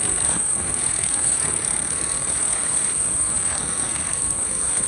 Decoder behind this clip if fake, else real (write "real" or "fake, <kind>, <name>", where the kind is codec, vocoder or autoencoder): fake, codec, SNAC